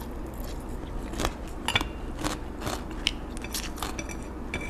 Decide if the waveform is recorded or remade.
recorded